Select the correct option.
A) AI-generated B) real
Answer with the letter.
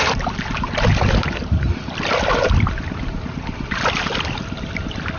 B